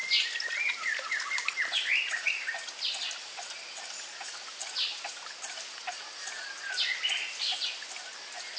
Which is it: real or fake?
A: real